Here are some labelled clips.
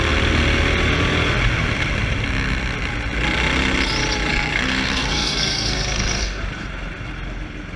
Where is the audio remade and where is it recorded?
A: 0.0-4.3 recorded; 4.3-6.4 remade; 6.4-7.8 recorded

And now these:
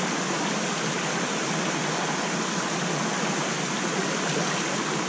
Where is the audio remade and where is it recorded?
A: 0.0-5.1 recorded